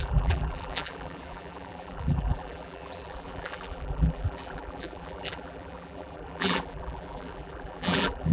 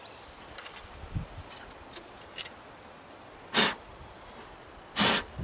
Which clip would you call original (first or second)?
second